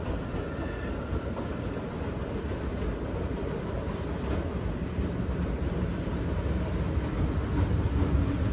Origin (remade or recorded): recorded